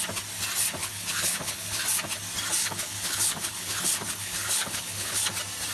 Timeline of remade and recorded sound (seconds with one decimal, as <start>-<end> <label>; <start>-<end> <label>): 0.0-0.8 recorded; 0.8-1.8 remade; 1.8-2.6 recorded; 2.6-5.3 remade; 5.3-5.7 recorded